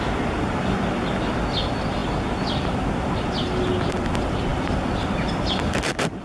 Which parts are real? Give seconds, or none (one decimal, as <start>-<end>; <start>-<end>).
0.0-6.2

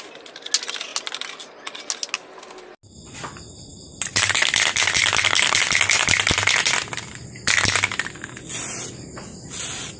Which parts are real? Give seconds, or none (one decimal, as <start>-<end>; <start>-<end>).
0.0-3.7; 5.7-10.0

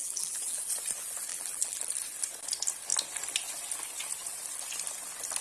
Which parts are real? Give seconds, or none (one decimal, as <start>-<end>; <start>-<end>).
0.6-1.3; 1.9-5.4

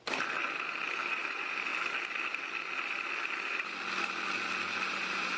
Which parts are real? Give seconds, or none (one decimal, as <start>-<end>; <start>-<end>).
1.7-4.9

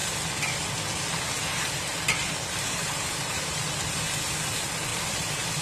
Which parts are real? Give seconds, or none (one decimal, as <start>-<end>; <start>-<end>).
0.0-1.4; 1.9-2.7; 3.8-4.9

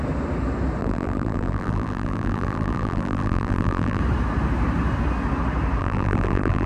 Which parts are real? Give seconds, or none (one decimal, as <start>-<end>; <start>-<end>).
0.0-0.8; 4.0-5.8